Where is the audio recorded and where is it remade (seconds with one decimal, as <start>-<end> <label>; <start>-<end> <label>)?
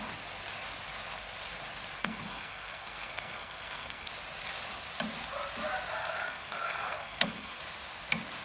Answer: 0.0-2.0 recorded; 2.0-4.1 remade; 4.1-6.0 recorded; 6.0-7.6 remade; 7.6-8.4 recorded